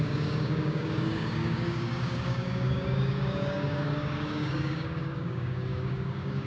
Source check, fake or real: fake